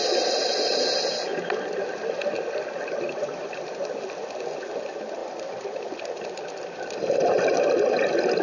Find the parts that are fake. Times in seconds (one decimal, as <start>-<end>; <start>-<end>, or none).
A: 5.2-6.6